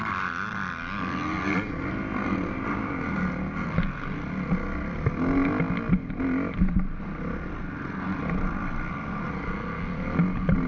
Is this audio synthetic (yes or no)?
no